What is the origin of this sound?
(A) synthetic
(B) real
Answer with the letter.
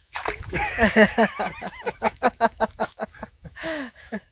A